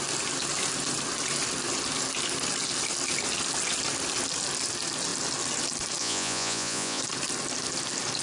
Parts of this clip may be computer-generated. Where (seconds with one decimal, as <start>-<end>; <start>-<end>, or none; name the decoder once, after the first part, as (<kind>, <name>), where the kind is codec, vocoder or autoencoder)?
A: 6.0-7.0 (vocoder, Vocos)